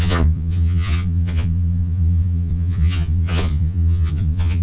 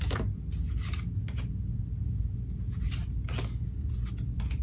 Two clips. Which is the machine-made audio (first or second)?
first